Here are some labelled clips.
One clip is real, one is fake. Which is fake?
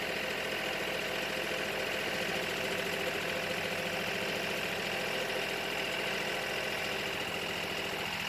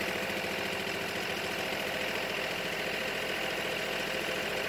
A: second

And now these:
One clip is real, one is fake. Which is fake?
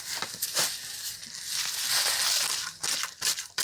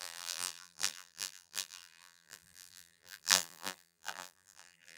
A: second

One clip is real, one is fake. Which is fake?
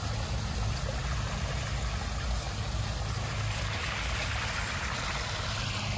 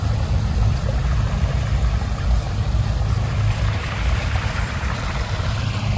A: second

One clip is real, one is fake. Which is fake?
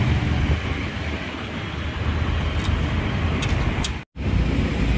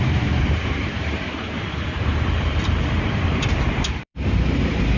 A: second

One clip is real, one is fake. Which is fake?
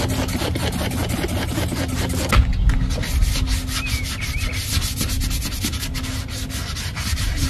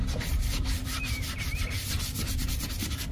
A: second